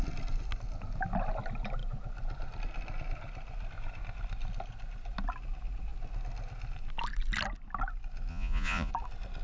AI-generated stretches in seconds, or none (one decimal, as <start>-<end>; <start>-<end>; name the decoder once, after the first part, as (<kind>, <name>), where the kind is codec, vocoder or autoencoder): 8.3-8.9 (vocoder, Vocos)